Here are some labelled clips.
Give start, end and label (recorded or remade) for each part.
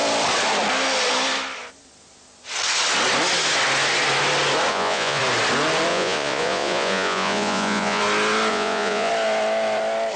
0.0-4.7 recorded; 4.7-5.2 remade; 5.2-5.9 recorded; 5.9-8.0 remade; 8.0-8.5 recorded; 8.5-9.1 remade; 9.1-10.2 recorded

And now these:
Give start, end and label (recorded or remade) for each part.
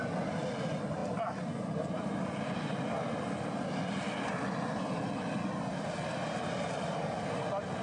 0.0-7.8 recorded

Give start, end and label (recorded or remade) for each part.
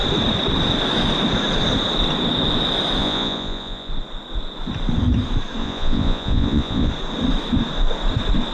0.0-3.0 recorded; 3.0-3.9 remade; 3.9-5.6 recorded; 5.6-6.9 remade; 6.9-8.5 recorded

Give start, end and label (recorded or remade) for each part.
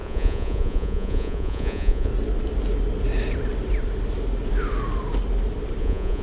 0.0-2.1 remade; 2.1-5.8 recorded; 5.8-6.2 remade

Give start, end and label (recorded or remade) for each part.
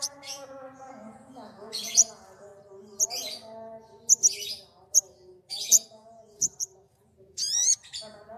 0.0-2.5 remade; 2.5-5.5 recorded; 5.5-8.4 remade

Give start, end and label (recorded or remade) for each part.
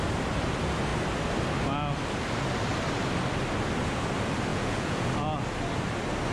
0.0-4.5 recorded; 4.5-5.1 remade; 5.1-6.3 recorded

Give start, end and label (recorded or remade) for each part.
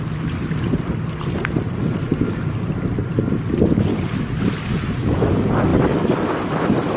0.0-7.0 recorded